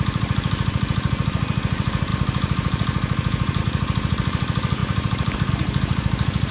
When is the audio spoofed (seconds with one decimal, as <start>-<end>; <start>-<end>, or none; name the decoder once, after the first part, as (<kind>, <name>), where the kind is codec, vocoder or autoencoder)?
0.0-6.5 (vocoder, BigVGAN v2)